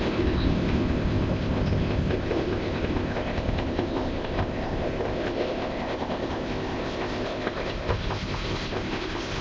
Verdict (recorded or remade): remade